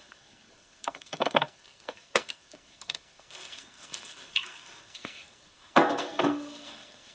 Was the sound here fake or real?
fake